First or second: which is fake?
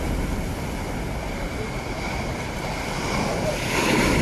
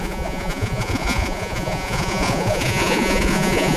second